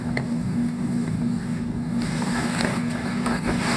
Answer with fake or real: fake